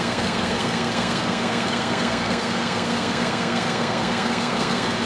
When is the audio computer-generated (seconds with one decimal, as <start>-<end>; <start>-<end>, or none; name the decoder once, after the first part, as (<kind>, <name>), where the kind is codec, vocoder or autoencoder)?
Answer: 0.0-5.1 (codec, SNAC)